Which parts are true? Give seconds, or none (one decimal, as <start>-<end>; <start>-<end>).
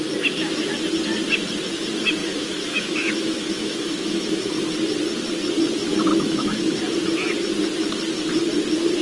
0.0-2.2; 4.5-6.1; 6.8-9.0